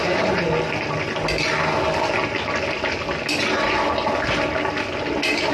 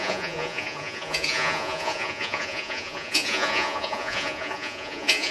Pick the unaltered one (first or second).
first